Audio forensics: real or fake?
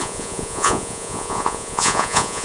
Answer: fake